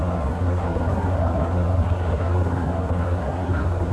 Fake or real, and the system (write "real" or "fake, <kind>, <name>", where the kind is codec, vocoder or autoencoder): fake, codec, SNAC